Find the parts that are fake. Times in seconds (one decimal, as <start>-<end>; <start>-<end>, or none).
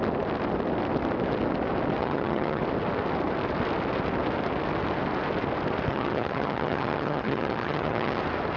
2.0-2.6; 5.9-8.2